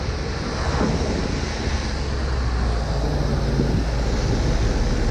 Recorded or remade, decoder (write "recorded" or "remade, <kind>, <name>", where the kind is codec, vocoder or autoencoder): recorded